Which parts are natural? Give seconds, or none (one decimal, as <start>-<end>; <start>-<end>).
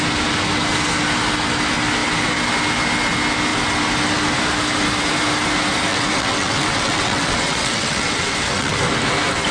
0.0-5.9; 8.8-9.5